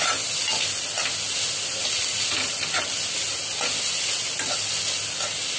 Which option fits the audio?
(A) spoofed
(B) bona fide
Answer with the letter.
B